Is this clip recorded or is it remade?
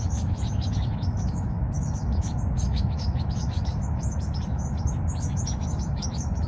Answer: remade